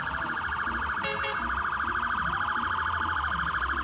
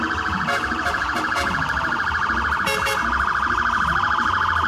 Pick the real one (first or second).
first